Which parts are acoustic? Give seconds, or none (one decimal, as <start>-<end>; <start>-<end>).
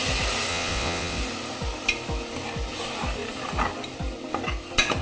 0.0-0.5; 1.2-5.0